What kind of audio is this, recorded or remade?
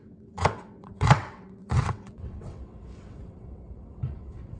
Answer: remade